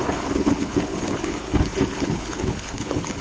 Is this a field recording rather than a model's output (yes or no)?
no